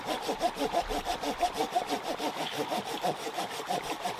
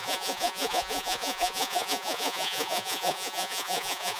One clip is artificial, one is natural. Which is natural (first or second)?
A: first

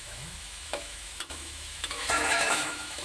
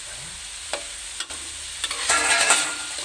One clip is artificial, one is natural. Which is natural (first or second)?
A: second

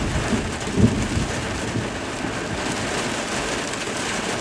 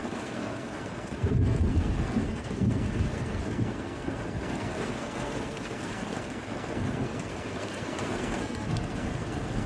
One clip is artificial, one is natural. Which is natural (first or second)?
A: first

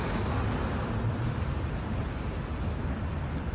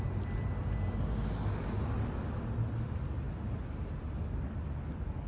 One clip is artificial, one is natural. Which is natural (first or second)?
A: second